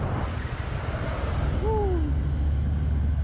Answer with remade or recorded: recorded